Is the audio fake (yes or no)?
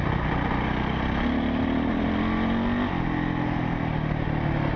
no